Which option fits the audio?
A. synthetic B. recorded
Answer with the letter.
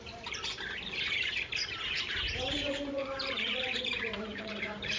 A